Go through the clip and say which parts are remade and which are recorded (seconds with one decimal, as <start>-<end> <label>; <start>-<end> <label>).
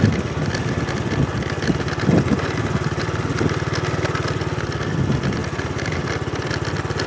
0.0-7.1 recorded